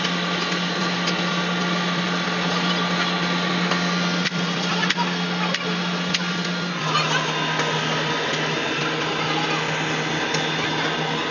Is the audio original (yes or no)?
yes